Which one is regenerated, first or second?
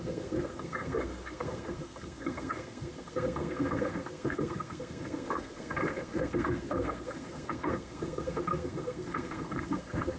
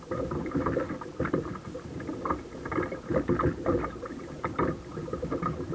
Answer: first